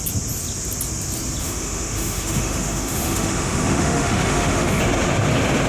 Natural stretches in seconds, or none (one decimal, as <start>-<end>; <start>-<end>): 0.0-1.4; 4.8-5.7